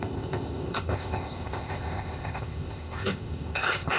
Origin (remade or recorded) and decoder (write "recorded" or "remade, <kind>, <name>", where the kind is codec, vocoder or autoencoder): remade, codec, ZipCodec